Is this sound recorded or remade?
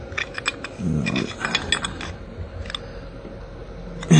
recorded